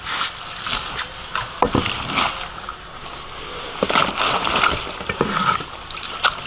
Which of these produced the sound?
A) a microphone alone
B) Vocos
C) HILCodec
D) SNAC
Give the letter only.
A